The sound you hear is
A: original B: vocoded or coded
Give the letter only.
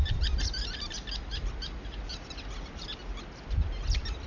A